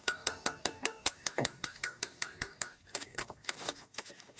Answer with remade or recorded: remade